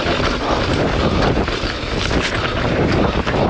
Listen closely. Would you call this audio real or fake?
real